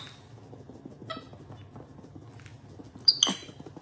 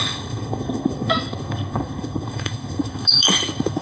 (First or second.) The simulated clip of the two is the second